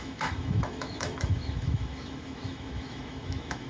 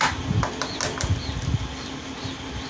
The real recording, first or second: second